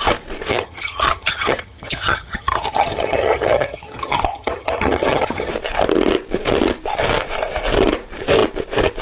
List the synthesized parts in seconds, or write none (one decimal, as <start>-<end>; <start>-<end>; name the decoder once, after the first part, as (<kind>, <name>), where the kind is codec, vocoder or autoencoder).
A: 0.5-5.5 (vocoder, HiFi-GAN)